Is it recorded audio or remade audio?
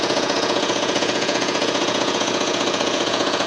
remade